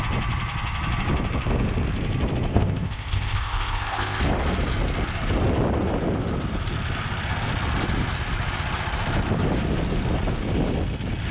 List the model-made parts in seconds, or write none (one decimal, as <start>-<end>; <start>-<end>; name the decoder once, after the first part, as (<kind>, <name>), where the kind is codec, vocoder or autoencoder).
2.5-4.2 (codec, ZipCodec)